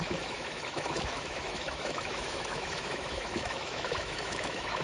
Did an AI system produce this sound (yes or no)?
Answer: yes